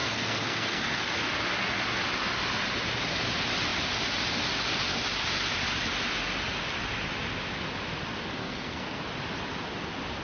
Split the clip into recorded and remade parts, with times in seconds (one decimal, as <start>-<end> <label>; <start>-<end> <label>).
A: 0.0-1.3 remade; 1.3-8.4 recorded; 8.4-9.0 remade; 9.0-10.2 recorded